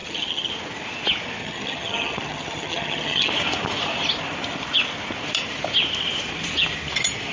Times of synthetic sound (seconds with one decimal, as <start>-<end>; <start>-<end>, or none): 0.0-0.5; 1.4-3.3